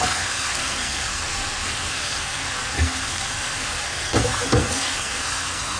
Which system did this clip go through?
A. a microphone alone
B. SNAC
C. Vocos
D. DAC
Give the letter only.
B